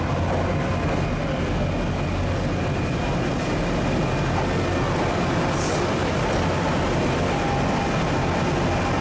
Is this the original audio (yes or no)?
yes